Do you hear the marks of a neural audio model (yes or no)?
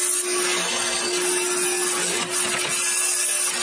no